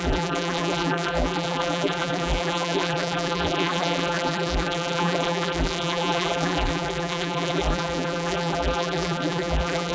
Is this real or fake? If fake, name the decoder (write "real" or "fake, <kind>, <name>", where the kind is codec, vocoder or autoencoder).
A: fake, vocoder, BigVGAN v2